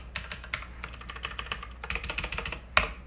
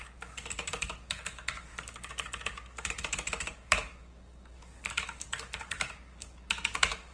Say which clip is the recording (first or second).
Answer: first